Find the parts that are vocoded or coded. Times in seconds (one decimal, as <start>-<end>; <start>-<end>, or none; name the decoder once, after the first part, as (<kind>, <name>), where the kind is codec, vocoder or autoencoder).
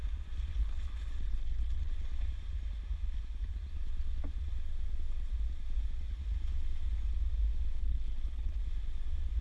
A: 0.5-1.9 (codec, HILCodec); 7.8-8.6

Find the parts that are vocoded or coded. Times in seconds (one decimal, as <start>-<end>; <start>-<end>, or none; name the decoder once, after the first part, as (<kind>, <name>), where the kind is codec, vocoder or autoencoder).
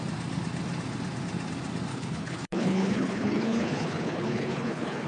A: 1.9-5.1 (codec, HILCodec)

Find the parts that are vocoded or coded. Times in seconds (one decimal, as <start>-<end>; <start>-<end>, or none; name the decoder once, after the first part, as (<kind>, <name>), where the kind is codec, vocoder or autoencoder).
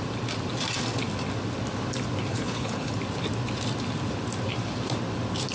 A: 2.3-2.9 (codec, HILCodec)